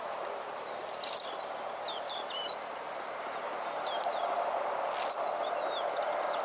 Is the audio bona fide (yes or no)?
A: yes